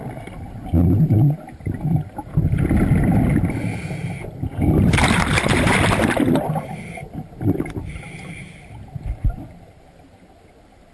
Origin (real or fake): real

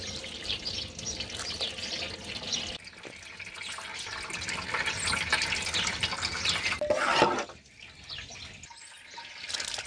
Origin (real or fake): real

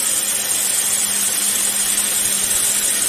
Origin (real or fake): real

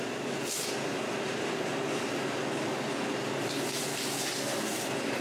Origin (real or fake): real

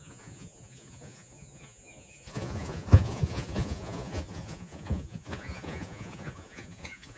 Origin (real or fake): fake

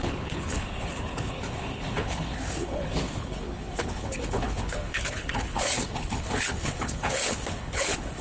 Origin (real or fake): fake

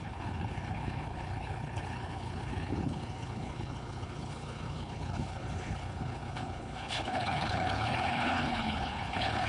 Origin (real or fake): fake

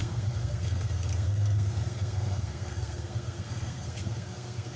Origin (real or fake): fake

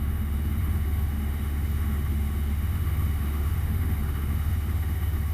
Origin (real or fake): fake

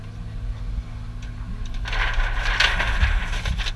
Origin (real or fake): real